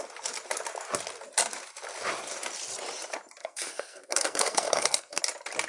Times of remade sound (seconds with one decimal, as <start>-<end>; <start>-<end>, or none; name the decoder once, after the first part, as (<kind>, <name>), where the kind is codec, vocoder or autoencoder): 3.4-5.2 (codec, SNAC)